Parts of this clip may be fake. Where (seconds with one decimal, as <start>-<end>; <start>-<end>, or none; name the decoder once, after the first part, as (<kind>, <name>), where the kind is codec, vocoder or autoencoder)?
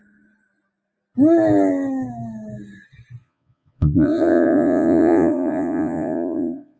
3.2-6.8 (vocoder, Vocos)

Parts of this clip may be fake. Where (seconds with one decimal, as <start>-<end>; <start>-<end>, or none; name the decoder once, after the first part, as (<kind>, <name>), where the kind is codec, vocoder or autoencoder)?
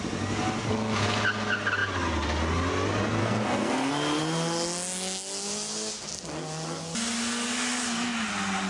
3.2-3.9 (codec, SNAC)